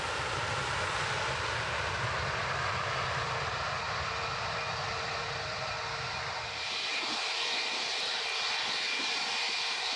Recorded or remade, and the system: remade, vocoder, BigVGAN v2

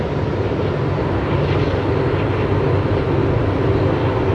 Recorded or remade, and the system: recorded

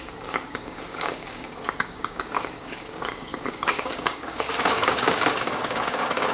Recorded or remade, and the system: remade, codec, DAC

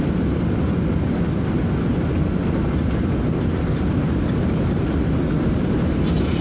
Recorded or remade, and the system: recorded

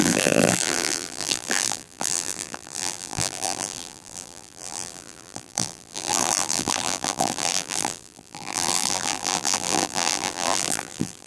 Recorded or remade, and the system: remade, vocoder, BigVGAN v2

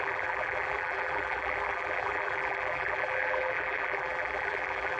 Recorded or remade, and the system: remade, vocoder, BigVGAN v2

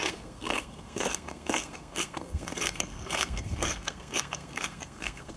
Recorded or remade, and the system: remade, codec, SNAC